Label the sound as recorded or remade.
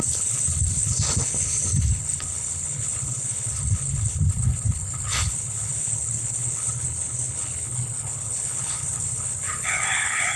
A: remade